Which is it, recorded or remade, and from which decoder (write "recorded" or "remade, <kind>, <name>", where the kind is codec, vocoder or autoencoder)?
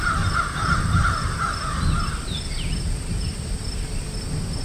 recorded